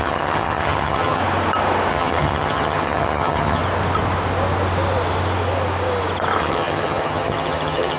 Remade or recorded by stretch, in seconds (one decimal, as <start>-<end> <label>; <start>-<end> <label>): 0.0-1.2 remade; 1.2-1.9 recorded; 1.9-3.6 remade; 3.6-6.4 recorded; 6.4-8.0 remade